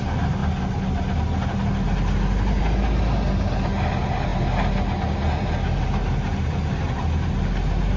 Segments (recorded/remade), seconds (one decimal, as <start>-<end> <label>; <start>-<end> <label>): 0.0-8.0 recorded